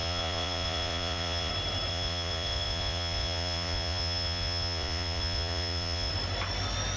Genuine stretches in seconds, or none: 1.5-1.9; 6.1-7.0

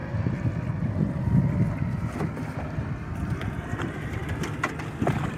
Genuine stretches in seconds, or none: 0.0-2.1

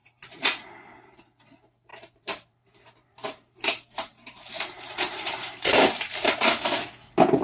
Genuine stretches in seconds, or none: 1.2-1.9; 6.3-7.4

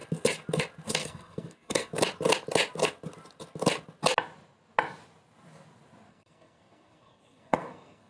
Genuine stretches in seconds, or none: 0.0-1.0; 2.0-6.1

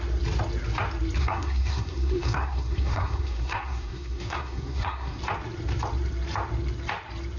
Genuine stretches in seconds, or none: 0.0-1.2; 5.2-7.4

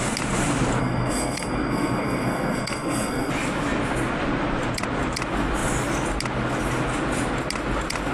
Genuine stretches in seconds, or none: 0.0-0.8; 3.3-8.1

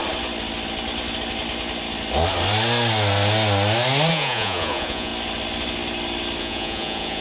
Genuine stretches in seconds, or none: 0.0-4.1; 5.1-6.4

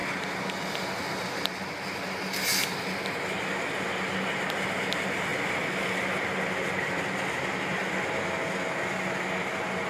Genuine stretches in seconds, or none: 0.0-9.9